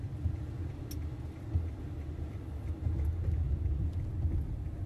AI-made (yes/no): no